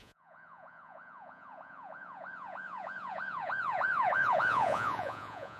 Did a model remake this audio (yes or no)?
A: yes